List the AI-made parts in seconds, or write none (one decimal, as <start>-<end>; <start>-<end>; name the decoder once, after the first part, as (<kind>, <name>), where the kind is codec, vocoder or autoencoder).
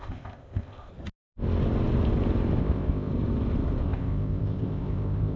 0.0-0.9 (codec, ZipCodec); 2.6-3.1; 3.8-5.4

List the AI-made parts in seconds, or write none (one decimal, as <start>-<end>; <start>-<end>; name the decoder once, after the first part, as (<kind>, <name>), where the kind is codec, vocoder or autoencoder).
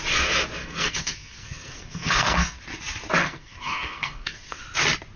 0.6-2.6 (codec, SNAC); 3.2-4.6